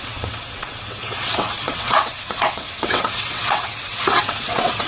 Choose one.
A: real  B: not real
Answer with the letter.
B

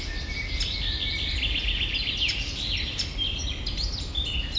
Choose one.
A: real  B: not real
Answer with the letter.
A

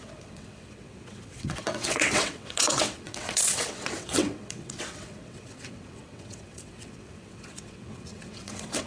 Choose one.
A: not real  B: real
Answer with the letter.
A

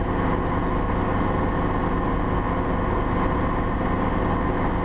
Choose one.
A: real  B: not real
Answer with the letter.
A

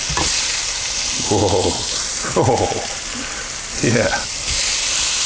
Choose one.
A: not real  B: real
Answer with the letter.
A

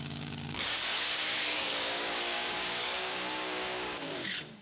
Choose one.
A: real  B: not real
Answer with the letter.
B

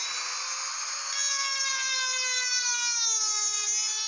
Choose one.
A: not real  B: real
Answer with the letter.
B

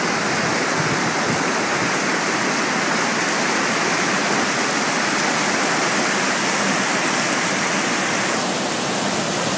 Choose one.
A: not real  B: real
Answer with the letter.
B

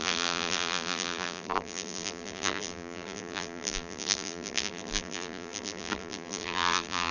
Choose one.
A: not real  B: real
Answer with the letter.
A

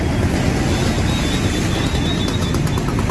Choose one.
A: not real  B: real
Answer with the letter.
B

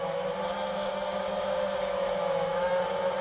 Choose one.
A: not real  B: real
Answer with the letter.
A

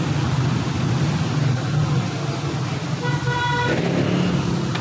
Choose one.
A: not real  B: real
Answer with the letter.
B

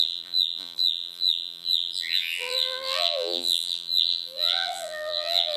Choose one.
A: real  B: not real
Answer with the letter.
B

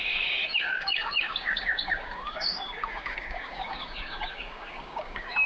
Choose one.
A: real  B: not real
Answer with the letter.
B